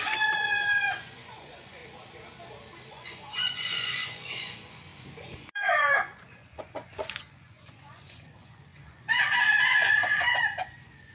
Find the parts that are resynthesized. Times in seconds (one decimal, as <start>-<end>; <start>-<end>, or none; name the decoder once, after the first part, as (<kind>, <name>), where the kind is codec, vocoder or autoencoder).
0.0-1.8 (vocoder, Vocos); 2.9-11.1